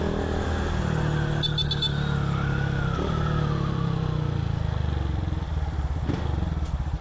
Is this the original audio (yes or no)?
yes